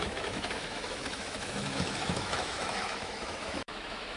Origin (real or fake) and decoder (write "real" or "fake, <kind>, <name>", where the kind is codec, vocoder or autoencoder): fake, autoencoder, DAC-VAE